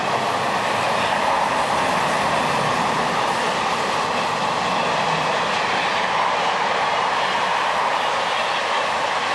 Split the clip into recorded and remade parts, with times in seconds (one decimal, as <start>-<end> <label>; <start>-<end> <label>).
0.0-9.3 recorded